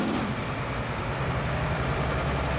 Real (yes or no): no